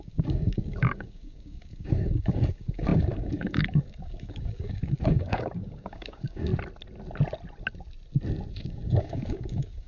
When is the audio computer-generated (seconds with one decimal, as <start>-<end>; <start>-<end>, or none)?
0.0-6.5; 8.5-9.9